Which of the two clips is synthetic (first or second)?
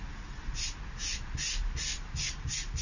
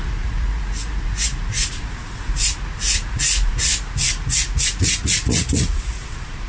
second